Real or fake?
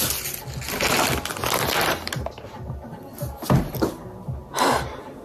real